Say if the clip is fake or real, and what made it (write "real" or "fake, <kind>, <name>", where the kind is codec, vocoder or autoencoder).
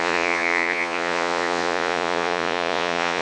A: fake, vocoder, Vocos